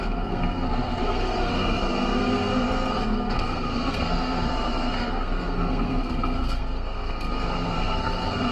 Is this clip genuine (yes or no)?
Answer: no